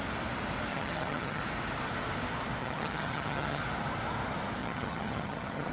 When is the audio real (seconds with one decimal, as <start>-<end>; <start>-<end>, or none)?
0.0-0.7; 1.4-2.6; 3.6-4.6